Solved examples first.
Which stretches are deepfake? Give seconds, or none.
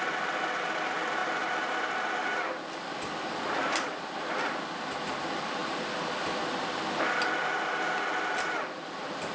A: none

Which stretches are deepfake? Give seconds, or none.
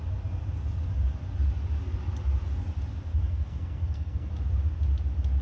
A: 3.2-4.3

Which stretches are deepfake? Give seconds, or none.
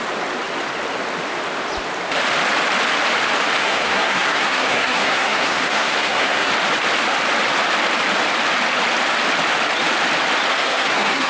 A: 3.6-6.5; 10.5-11.3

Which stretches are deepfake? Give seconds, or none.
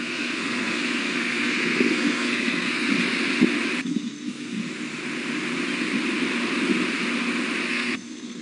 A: 0.0-2.9; 3.8-4.6; 7.7-8.4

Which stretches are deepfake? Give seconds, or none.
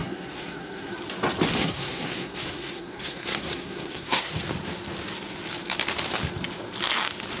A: 0.0-0.9; 1.6-4.3